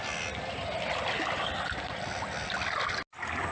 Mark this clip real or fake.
real